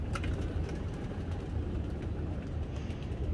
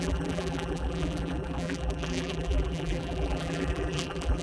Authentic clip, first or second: first